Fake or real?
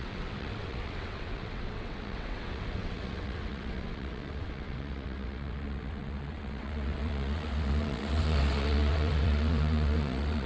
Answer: fake